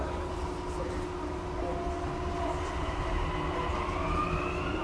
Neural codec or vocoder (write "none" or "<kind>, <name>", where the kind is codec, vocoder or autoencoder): none